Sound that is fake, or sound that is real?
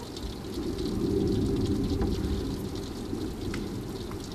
real